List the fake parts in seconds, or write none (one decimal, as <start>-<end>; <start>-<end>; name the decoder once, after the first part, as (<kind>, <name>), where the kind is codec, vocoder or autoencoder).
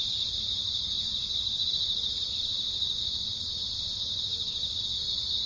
0.0-4.7 (vocoder, BigVGAN v2)